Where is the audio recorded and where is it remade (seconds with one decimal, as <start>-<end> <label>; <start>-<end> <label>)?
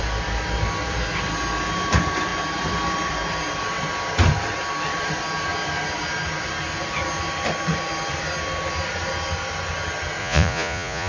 0.0-10.2 recorded; 10.2-11.1 remade